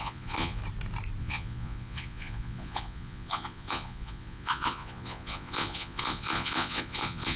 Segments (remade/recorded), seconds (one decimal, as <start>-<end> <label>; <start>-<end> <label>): 0.0-0.6 remade; 0.6-1.2 recorded; 1.2-7.4 remade